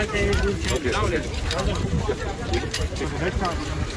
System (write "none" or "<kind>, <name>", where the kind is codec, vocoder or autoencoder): none